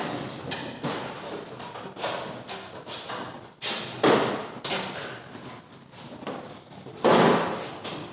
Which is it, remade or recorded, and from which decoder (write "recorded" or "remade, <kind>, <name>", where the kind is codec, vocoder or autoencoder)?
recorded